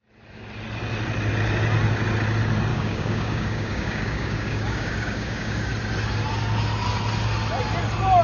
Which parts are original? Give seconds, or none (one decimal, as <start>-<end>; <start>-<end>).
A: 0.0-2.7; 5.7-8.2